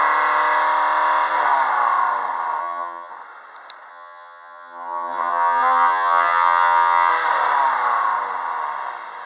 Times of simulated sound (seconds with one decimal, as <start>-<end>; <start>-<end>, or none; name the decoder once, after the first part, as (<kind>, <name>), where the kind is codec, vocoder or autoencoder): 2.6-3.1 (vocoder, HiFi-GAN); 3.9-7.1